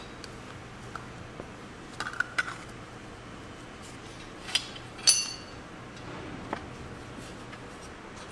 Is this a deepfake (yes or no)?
no